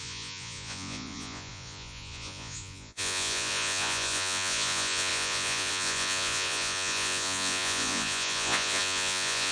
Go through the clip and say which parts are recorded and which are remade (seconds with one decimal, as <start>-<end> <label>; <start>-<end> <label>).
0.0-9.5 remade